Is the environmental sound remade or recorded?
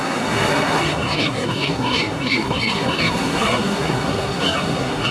remade